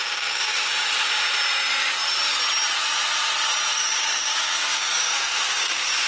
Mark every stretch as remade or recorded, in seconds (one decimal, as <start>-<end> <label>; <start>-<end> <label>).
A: 0.0-0.7 remade; 0.7-3.7 recorded; 3.7-6.1 remade